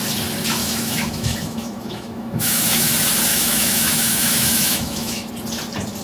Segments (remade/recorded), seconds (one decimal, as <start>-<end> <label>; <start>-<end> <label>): 0.0-0.6 recorded; 0.6-2.9 remade; 2.9-3.3 recorded; 3.3-5.3 remade; 5.3-6.0 recorded